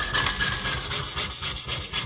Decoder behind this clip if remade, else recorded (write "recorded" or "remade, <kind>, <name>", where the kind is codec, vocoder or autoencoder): recorded